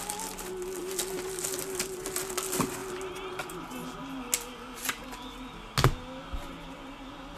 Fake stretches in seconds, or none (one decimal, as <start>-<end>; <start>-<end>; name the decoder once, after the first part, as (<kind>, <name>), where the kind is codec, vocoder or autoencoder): none